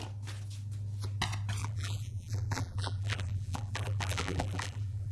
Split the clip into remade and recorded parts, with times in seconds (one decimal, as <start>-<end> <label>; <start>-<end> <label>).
0.0-1.6 recorded; 1.6-5.1 remade